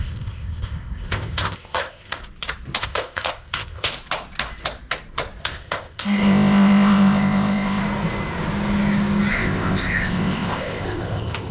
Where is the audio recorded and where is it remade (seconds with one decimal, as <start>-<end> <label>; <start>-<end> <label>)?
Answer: 0.0-2.2 remade; 2.2-2.8 recorded; 2.8-3.9 remade; 3.9-5.4 recorded; 5.4-7.8 remade; 7.8-9.3 recorded; 9.3-11.5 remade